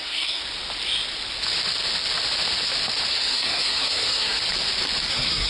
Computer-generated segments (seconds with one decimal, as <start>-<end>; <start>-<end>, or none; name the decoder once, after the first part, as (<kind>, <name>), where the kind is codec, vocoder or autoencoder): 0.0-0.4 (codec, SNAC); 3.1-4.4; 5.1-5.5